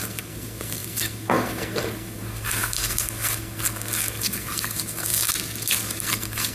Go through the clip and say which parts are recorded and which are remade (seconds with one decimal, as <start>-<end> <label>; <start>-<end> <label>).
0.0-6.5 remade